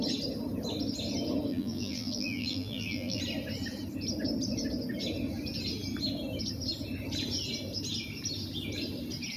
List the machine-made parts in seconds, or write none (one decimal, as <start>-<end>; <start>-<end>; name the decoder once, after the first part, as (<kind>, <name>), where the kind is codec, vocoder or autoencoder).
1.5-3.2 (vocoder, BigVGAN v2)